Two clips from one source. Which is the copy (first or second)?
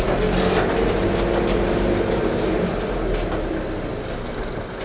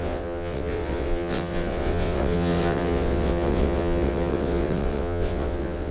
second